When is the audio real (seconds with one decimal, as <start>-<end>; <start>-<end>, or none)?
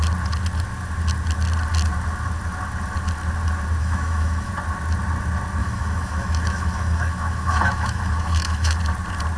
0.0-3.8; 4.5-5.6; 8.8-9.4